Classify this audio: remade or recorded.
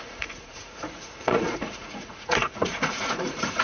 remade